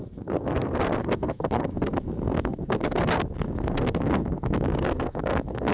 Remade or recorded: remade